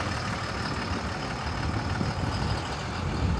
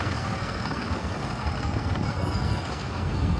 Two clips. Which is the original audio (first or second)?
first